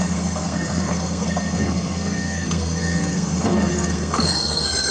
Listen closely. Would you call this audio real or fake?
fake